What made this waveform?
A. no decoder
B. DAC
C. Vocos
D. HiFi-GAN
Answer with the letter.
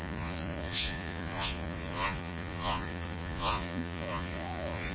C